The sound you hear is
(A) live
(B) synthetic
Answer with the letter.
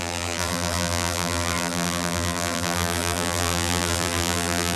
B